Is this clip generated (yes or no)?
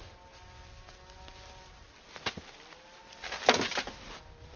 no